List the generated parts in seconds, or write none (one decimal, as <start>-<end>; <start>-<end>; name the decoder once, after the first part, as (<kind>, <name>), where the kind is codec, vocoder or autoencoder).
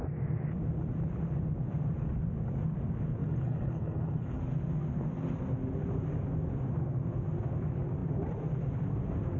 3.2-4.4 (codec, HILCodec)